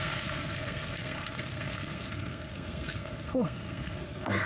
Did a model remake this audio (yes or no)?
yes